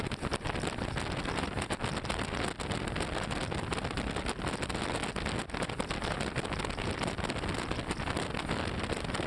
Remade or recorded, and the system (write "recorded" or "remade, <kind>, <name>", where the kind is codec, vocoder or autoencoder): recorded